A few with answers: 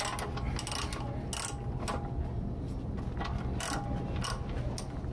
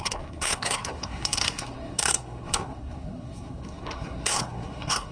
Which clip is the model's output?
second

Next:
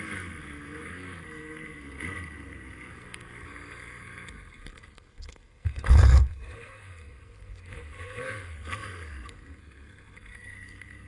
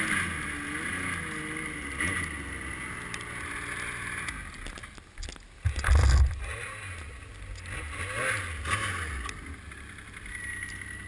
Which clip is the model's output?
first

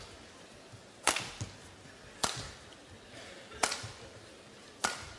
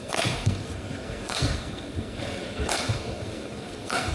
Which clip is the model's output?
second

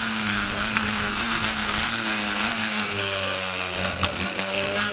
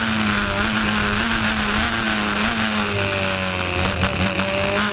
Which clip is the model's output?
first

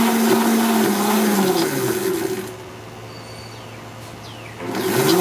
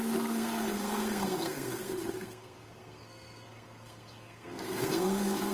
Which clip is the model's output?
second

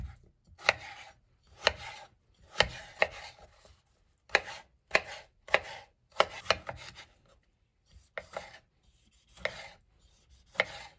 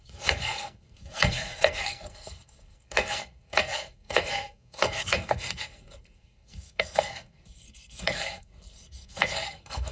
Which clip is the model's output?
second